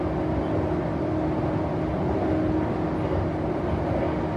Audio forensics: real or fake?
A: real